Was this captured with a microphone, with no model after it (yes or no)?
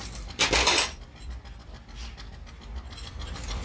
no